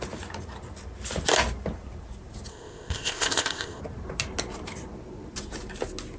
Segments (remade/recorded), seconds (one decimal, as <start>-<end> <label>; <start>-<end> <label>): 0.0-2.5 recorded; 2.5-3.8 remade; 3.8-6.2 recorded